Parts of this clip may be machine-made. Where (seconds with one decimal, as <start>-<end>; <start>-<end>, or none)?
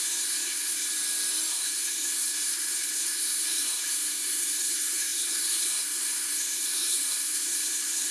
0.0-0.9; 1.5-8.1